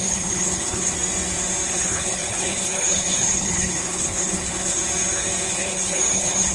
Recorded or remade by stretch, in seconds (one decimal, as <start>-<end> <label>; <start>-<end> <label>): 0.0-0.9 remade; 0.9-1.7 recorded; 1.7-4.8 remade; 4.8-5.5 recorded; 5.5-6.5 remade